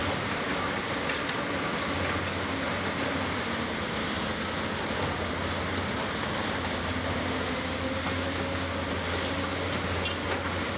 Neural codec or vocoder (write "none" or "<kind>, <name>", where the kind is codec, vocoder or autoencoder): none